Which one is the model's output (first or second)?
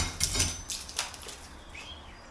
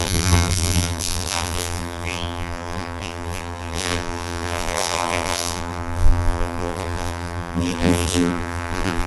second